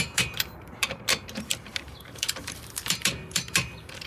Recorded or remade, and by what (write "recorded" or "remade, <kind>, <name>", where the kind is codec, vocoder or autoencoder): remade, vocoder, BigVGAN v2